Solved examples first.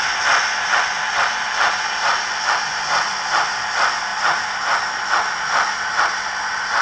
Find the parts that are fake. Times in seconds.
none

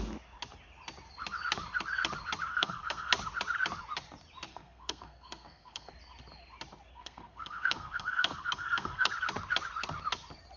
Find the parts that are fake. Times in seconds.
2.5-3.1 (codec, SNAC); 4.5-5.9; 6.9-9.1

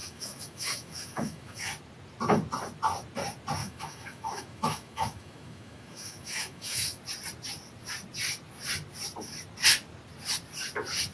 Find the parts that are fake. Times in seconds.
0.0-1.7 (autoencoder, DAC-VAE); 3.6-7.0

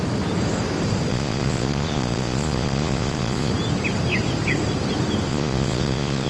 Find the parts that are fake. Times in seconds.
1.1-3.5 (vocoder, Vocos); 5.3-6.3

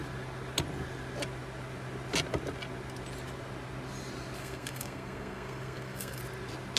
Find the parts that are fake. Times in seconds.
4.4-6.2 (codec, SNAC)

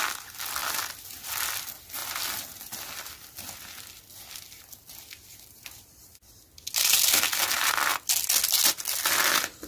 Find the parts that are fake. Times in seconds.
none

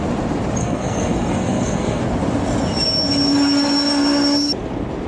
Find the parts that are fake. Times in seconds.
0.6-2.0 (codec, SNAC)

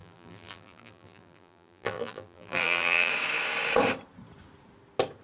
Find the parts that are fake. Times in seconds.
0.0-3.1 (vocoder, BigVGAN v2)